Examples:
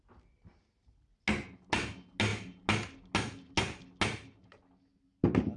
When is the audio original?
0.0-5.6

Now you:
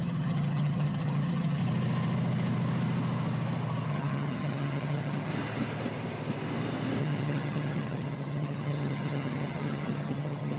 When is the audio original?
1.6-3.9; 5.3-7.0